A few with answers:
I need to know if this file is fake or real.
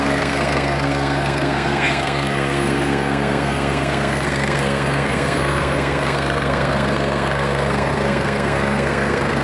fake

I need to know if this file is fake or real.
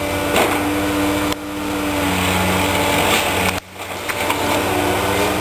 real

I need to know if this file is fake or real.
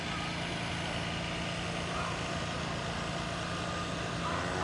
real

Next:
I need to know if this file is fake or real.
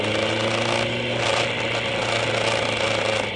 real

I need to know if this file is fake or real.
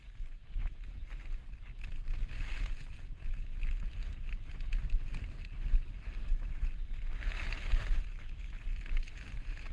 real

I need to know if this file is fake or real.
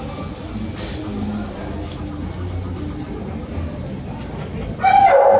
real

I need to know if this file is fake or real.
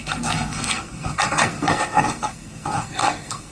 fake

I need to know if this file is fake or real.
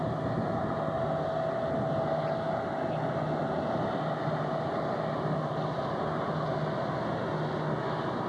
real